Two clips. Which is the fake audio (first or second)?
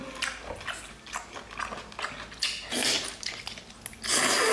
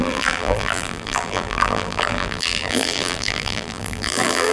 second